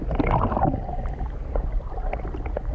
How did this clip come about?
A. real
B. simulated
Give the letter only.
A